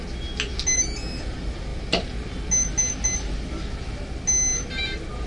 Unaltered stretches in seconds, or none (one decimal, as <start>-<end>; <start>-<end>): 0.0-5.3